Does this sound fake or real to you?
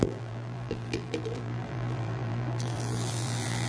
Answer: fake